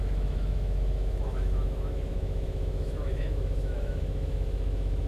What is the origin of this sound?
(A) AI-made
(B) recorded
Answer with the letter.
A